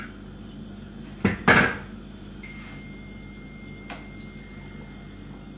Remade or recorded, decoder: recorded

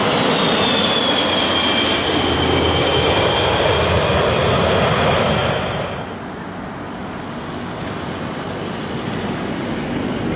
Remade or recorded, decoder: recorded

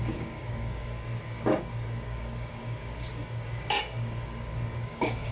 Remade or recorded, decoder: remade, codec, DAC